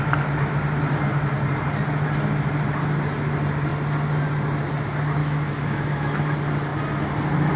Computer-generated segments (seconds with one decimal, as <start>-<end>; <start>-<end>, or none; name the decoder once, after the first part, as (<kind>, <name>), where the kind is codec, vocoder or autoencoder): 5.2-6.2 (autoencoder, DAC-VAE)